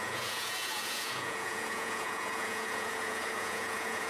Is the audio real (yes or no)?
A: no